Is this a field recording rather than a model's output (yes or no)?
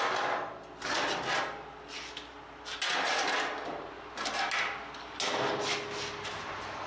yes